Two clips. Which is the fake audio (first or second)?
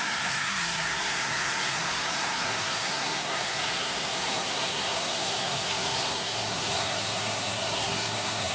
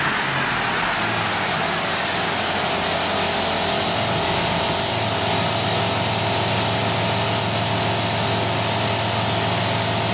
first